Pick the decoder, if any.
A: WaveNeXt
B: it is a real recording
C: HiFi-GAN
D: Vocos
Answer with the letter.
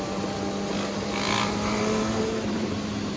B